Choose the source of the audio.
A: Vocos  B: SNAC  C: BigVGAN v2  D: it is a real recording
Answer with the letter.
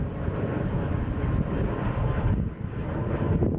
D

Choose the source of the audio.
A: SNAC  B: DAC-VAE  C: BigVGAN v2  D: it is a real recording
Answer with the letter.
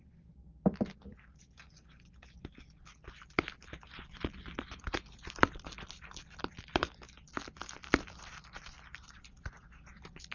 C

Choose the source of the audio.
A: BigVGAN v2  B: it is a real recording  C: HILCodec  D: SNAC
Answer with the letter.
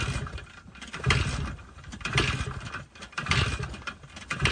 B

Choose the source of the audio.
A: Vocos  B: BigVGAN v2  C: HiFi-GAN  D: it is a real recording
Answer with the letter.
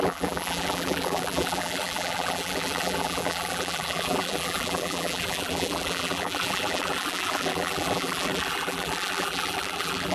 B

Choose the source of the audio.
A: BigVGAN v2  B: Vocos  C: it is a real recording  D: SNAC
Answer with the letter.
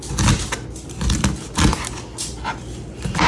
C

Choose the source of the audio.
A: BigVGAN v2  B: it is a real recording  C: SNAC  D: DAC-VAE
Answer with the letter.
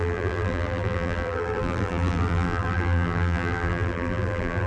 A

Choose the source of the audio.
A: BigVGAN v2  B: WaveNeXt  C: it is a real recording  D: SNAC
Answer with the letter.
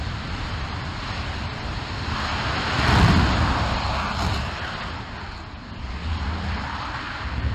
C